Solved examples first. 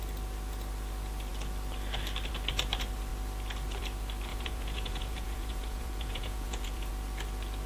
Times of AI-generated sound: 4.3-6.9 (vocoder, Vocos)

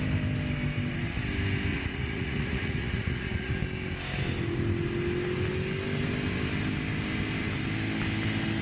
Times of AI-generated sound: 1.7-3.6 (vocoder, Vocos)

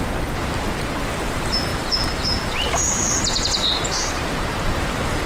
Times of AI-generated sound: 1.7-5.3 (vocoder, BigVGAN v2)

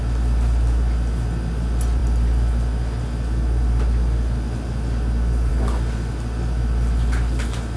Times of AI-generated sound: none